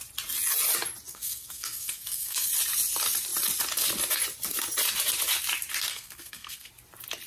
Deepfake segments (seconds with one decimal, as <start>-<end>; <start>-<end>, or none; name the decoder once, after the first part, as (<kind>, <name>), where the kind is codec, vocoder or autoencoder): 1.1-2.5 (codec, SNAC); 5.9-6.7

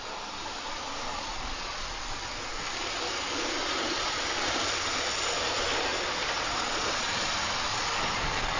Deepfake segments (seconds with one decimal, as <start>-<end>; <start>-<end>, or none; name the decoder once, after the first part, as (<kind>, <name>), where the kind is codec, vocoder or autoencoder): 1.1-2.0 (vocoder, Vocos); 3.6-4.2; 5.9-7.2

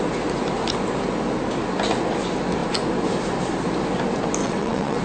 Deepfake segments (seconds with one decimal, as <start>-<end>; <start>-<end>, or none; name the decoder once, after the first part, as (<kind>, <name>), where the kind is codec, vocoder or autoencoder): 4.4-5.0 (vocoder, WaveNeXt)